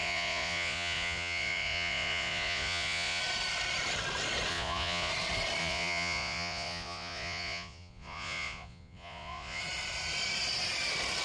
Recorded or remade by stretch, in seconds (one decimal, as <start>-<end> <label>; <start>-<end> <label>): 0.0-3.2 remade; 3.2-4.5 recorded; 4.5-5.1 remade; 5.1-5.6 recorded; 5.6-9.6 remade; 9.6-11.2 recorded